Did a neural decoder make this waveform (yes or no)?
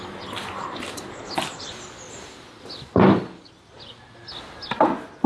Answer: no